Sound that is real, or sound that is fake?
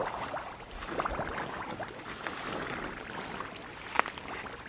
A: real